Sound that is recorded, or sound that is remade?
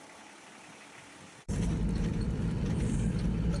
remade